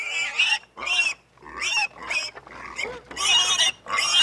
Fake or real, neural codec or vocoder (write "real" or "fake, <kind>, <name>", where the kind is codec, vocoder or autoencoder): real